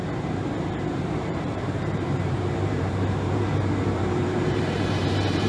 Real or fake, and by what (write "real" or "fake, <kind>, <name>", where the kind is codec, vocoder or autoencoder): fake, vocoder, BigVGAN v2